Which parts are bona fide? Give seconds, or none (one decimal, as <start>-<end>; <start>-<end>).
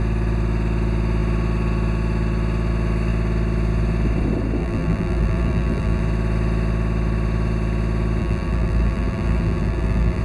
0.0-4.6; 6.0-8.2